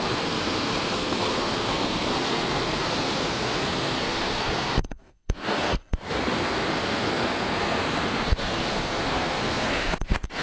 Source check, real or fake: fake